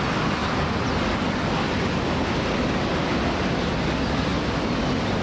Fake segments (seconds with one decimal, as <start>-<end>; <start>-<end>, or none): none